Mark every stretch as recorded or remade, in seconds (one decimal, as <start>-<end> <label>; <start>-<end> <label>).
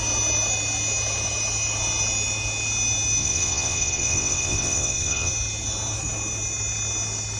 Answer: 0.0-3.2 recorded; 3.2-5.3 remade; 5.3-7.4 recorded